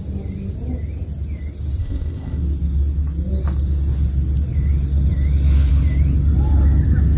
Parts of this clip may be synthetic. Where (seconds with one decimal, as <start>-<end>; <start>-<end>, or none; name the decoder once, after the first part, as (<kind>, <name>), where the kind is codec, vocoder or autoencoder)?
1.8-2.4 (codec, ZipCodec)